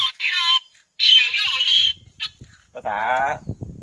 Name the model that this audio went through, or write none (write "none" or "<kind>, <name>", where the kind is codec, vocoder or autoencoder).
vocoder, BigVGAN v2